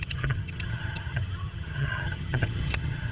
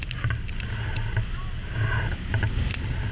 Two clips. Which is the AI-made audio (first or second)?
first